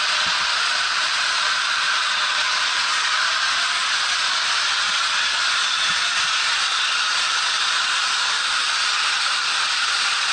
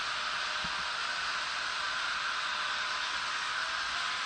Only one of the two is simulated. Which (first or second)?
first